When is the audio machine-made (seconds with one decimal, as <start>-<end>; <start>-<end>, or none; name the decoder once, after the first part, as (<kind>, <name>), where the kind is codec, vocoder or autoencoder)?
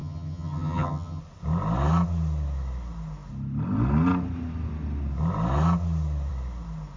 0.0-1.2 (vocoder, HiFi-GAN)